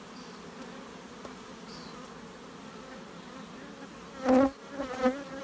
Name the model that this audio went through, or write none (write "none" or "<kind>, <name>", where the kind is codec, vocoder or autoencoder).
none